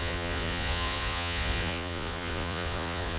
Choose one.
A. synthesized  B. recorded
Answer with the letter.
A